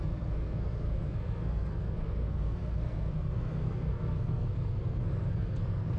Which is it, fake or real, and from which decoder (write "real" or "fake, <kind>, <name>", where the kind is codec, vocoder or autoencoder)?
fake, codec, SNAC